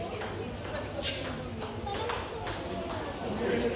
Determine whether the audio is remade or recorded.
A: recorded